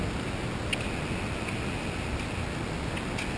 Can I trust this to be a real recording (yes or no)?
yes